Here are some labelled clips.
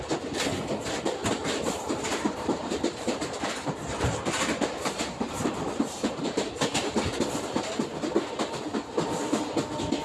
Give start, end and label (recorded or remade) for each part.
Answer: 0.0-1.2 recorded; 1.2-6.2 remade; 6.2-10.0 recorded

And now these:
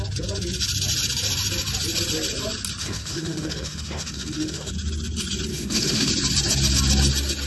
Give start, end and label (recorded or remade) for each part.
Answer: 0.0-2.8 recorded; 2.8-4.7 remade; 4.7-5.5 recorded; 5.5-6.1 remade; 6.1-7.5 recorded

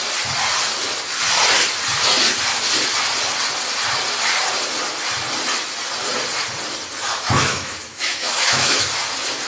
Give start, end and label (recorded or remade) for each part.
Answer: 0.0-7.1 recorded; 7.1-8.9 remade; 8.9-9.5 recorded

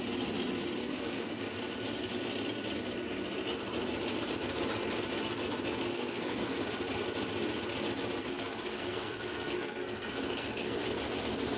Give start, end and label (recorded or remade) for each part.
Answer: 0.0-0.8 recorded; 0.8-1.4 remade; 1.4-5.9 recorded; 5.9-6.6 remade; 6.6-8.2 recorded; 8.2-10.8 remade; 10.8-11.6 recorded

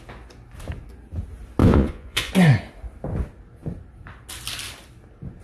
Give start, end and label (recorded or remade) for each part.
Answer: 0.0-1.6 recorded; 1.6-2.3 remade; 2.3-5.4 recorded

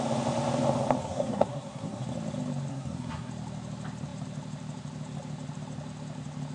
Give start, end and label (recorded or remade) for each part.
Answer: 0.0-1.0 recorded; 1.0-2.0 remade; 2.0-2.7 recorded; 2.7-3.3 remade; 3.3-6.5 recorded

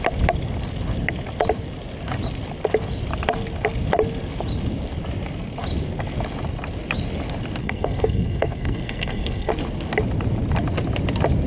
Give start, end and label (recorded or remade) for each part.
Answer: 0.0-7.6 recorded; 7.6-9.5 remade; 9.5-11.5 recorded

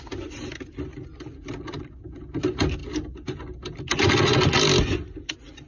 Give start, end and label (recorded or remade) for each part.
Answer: 0.0-5.7 recorded